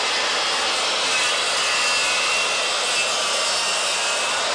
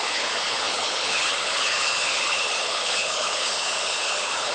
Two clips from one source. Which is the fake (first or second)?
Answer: second